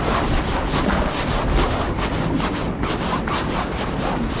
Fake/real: real